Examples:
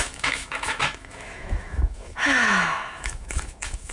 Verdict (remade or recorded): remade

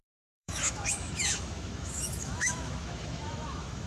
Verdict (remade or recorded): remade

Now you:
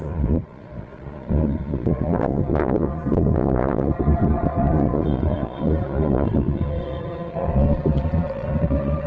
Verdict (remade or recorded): remade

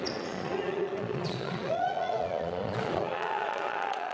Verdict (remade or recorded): remade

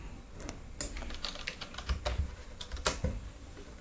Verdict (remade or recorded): recorded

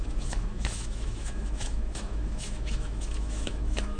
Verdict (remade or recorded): remade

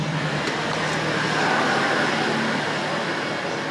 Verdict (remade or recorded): recorded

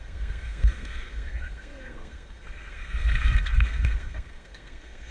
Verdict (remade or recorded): remade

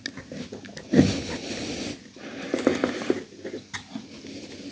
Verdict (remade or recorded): recorded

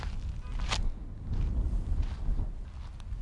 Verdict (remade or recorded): recorded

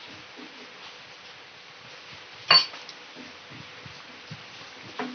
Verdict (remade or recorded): recorded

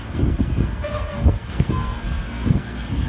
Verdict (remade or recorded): remade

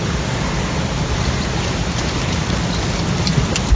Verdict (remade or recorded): recorded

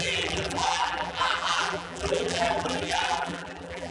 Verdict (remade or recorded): remade